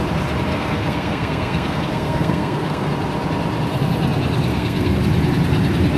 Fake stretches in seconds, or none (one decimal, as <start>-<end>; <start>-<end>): 0.5-2.9; 4.5-5.0